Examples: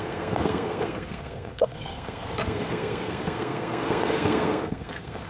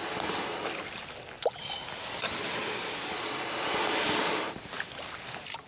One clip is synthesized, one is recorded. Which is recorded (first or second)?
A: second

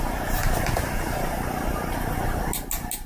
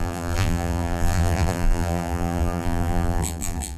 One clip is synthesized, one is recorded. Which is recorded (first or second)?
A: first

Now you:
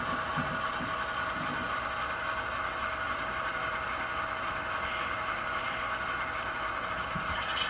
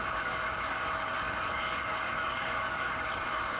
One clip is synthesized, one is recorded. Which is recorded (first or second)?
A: first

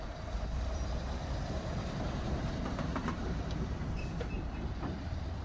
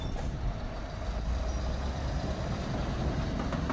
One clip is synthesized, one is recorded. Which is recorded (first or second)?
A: second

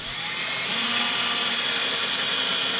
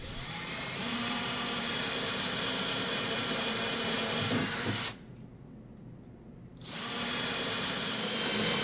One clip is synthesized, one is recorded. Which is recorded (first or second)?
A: first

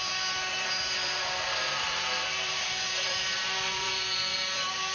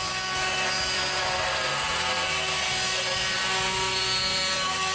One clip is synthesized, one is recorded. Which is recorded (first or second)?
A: second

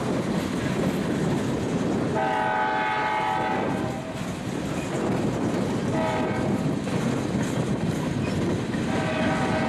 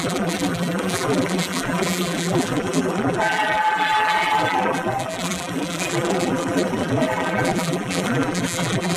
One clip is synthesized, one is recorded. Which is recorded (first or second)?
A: first